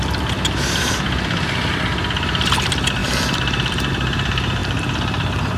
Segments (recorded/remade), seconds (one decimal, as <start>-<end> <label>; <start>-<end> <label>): 0.0-5.6 remade